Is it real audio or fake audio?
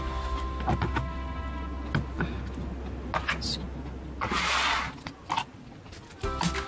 real